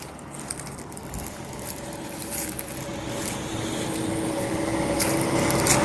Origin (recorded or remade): recorded